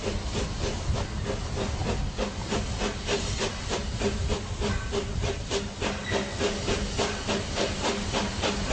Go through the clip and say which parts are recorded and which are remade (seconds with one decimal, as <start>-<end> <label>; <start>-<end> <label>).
0.0-8.7 recorded